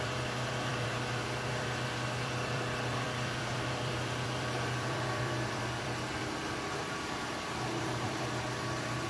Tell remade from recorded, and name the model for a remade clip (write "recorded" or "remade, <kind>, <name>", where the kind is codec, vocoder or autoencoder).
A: remade, vocoder, BigVGAN v2